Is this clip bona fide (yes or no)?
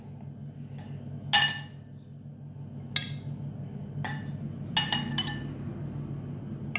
yes